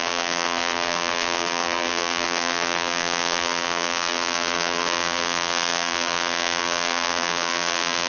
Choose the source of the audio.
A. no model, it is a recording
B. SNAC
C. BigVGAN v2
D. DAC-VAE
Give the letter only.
C